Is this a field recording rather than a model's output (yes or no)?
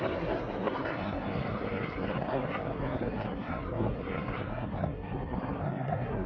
no